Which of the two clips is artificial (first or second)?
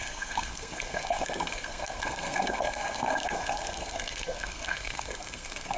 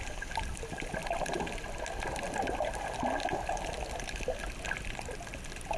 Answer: first